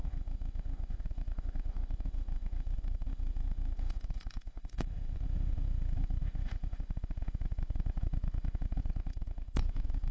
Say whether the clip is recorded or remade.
remade